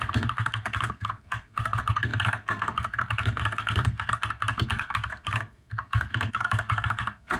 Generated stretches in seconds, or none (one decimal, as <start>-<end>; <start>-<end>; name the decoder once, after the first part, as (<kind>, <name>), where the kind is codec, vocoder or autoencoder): 0.0-7.4 (codec, SNAC)